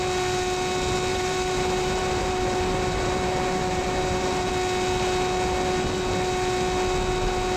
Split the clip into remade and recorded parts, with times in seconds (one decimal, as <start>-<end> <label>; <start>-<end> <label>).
0.0-1.1 recorded; 1.1-4.5 remade; 4.5-7.6 recorded